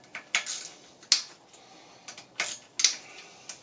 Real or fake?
real